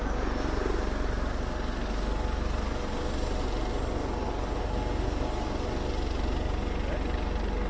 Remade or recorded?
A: recorded